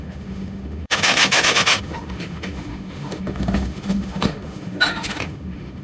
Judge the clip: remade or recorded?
remade